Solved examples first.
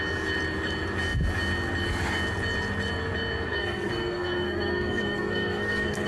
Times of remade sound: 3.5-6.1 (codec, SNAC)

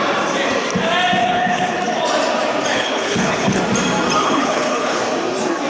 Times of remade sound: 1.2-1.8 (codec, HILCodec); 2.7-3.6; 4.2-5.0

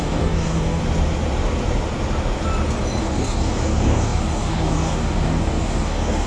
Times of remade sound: 0.0-0.8 (codec, DAC); 3.0-6.3

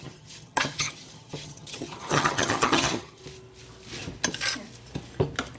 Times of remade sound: 0.0-3.2 (vocoder, HiFi-GAN)